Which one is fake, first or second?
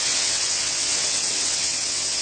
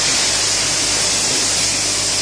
first